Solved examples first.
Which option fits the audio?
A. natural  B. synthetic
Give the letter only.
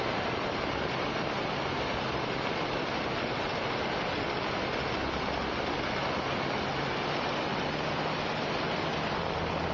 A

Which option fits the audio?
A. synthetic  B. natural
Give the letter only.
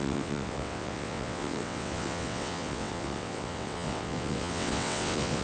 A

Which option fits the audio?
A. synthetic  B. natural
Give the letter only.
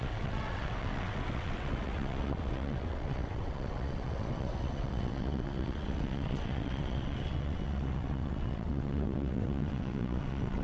A